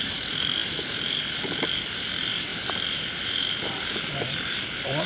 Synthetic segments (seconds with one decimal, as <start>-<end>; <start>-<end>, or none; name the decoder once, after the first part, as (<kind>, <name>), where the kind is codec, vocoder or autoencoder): none